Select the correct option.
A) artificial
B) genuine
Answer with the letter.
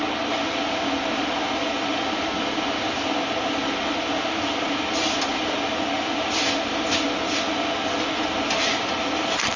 B